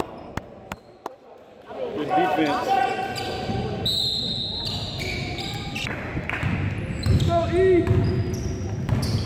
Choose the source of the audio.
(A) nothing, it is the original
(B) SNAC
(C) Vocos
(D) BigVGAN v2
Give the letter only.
A